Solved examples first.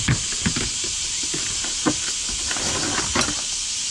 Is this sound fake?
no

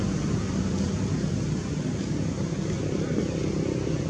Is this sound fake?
no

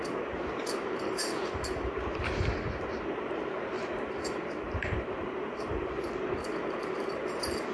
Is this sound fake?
yes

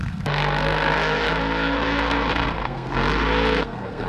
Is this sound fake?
yes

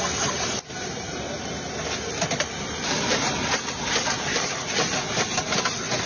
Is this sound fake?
no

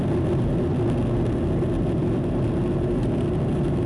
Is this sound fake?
no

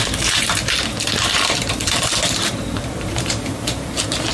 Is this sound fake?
yes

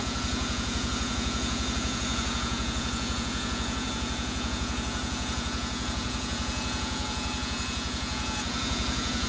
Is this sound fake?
yes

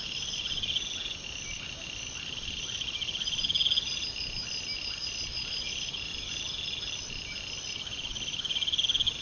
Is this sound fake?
no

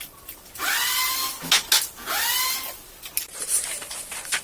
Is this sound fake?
no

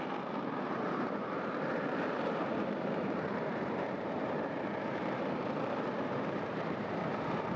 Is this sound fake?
yes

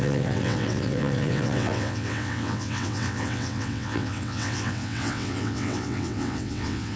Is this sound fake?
yes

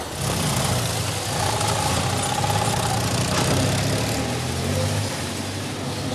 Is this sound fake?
no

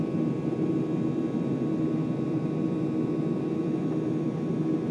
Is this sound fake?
no